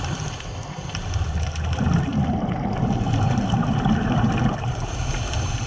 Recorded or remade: recorded